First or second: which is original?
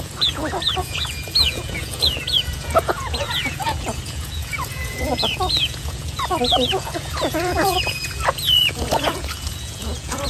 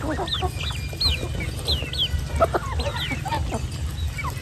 second